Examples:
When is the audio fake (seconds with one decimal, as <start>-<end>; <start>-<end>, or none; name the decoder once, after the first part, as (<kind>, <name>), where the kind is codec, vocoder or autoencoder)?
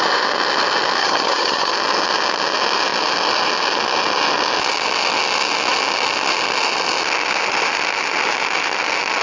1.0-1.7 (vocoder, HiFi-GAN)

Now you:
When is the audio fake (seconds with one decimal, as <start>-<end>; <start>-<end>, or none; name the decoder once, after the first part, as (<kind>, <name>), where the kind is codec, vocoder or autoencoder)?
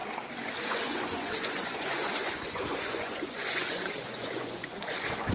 0.7-5.3 (vocoder, Vocos)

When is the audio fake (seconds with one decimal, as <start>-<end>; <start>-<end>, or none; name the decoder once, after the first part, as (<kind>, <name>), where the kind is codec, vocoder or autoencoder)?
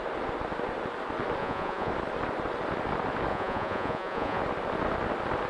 1.4-1.9 (vocoder, Vocos); 3.3-4.4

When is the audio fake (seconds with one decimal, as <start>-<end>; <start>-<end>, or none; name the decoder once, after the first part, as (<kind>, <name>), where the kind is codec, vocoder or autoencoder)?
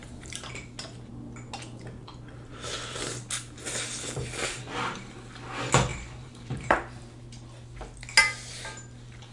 0.0-0.5 (vocoder, BigVGAN v2); 5.9-7.0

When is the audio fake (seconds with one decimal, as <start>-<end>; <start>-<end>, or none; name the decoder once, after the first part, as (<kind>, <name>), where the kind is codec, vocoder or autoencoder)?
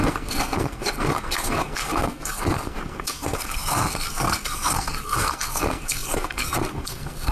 0.0-7.3 (codec, SNAC)